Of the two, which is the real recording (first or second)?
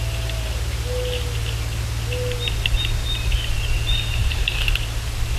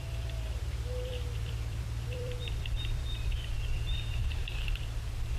first